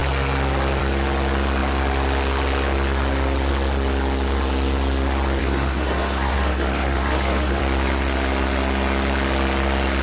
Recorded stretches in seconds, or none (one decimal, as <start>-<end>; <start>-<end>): 0.0-5.4; 7.6-10.0